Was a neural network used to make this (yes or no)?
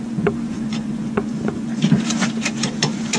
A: yes